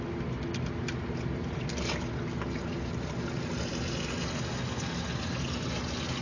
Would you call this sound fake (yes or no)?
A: no